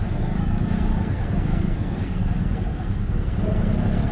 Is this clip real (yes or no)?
no